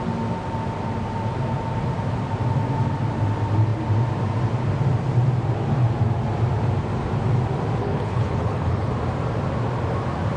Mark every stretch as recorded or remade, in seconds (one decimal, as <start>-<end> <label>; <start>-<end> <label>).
0.0-7.8 recorded; 7.8-8.9 remade; 8.9-10.4 recorded